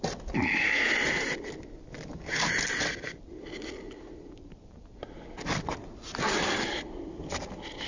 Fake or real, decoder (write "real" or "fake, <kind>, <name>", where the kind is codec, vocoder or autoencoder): real